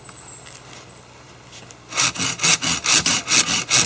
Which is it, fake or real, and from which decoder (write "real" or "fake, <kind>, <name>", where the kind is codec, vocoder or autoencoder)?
real